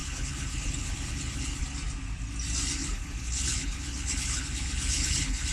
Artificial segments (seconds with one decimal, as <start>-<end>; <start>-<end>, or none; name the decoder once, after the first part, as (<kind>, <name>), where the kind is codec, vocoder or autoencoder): 0.0-1.6 (codec, HILCodec); 2.8-5.5